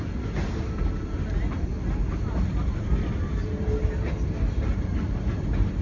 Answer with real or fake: real